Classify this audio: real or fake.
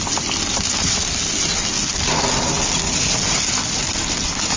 real